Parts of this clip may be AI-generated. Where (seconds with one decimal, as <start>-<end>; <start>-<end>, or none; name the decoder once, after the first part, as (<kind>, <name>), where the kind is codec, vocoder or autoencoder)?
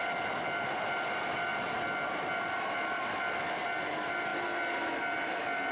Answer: none